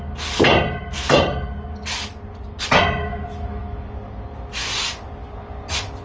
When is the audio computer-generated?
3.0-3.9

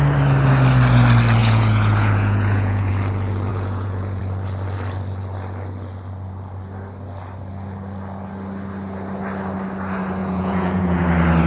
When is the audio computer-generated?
1.4-2.9; 3.5-4.2; 10.2-11.0